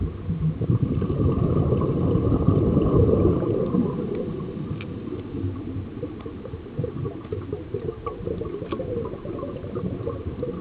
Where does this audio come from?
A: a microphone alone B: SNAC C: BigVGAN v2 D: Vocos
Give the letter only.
C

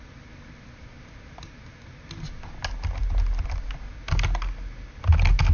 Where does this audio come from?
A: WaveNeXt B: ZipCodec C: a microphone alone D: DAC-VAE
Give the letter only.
C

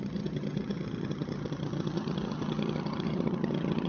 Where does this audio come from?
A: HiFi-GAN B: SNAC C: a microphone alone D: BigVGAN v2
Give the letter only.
A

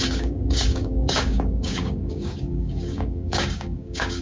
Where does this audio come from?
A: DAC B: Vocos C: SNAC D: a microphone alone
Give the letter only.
A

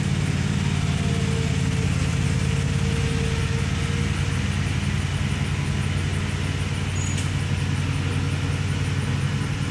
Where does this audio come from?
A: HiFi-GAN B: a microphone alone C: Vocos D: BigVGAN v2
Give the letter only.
B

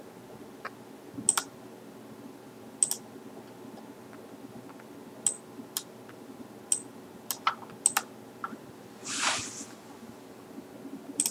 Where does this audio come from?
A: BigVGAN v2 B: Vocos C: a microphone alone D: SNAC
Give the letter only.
C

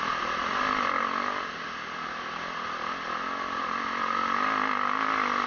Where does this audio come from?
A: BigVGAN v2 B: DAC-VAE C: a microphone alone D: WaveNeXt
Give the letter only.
C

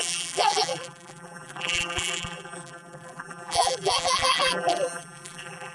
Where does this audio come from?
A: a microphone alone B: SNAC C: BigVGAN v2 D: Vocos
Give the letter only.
C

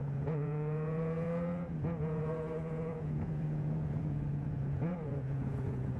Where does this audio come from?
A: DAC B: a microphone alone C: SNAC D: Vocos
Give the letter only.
D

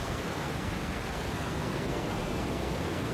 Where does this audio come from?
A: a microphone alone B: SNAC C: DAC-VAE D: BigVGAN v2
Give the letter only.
B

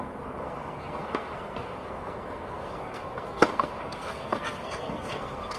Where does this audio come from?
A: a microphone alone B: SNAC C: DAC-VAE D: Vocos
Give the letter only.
B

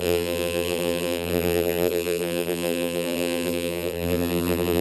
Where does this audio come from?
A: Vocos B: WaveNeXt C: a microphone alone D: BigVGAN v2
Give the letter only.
D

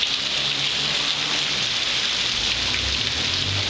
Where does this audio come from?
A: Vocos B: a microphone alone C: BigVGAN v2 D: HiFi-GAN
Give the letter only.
B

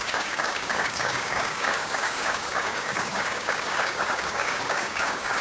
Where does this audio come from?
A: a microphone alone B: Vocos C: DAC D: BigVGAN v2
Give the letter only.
C